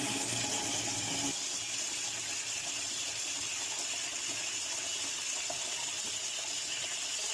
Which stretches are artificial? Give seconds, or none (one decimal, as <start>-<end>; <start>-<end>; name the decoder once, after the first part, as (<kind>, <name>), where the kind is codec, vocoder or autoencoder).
none